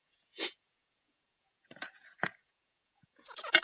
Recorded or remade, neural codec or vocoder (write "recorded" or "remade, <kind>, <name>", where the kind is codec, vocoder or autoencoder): remade, vocoder, Vocos